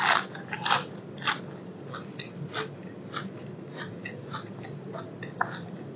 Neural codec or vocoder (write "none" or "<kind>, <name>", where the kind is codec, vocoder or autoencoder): none